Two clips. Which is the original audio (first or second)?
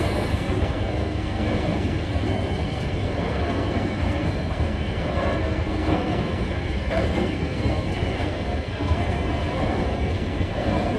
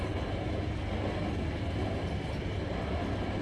second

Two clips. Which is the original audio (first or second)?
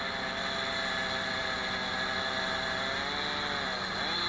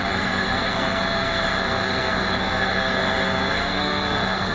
first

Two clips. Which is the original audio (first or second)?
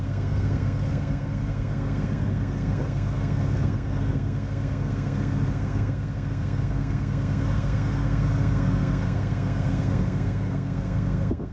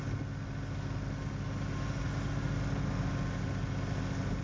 second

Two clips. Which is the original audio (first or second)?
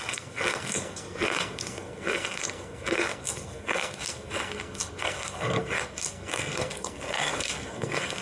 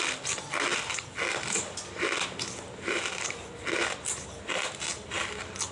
second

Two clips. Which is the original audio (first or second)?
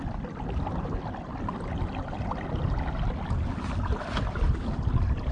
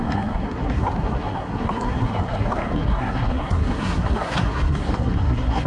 first